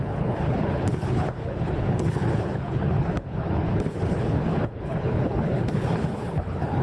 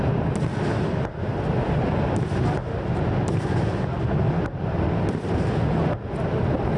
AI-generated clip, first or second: first